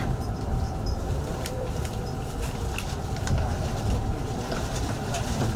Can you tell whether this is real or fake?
fake